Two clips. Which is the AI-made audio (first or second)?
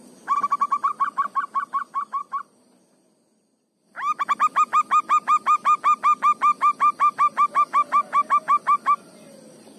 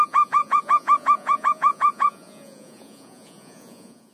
second